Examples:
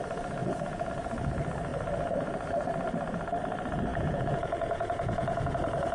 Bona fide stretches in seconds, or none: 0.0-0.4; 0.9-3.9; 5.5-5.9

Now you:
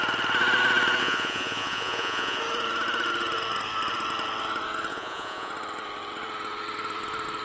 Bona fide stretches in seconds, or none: 0.0-1.0; 2.4-4.9; 5.5-7.4

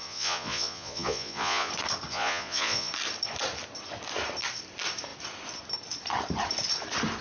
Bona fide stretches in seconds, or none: 1.7-2.1; 2.9-7.2

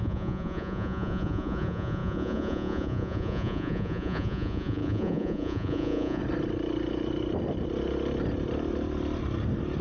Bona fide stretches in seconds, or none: 6.2-9.8

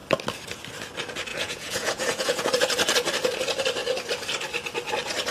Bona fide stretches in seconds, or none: 0.0-1.3; 2.5-5.3